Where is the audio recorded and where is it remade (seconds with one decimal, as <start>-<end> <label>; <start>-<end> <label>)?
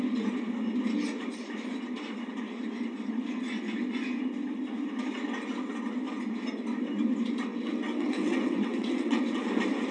0.0-7.5 recorded; 7.5-9.4 remade; 9.4-9.9 recorded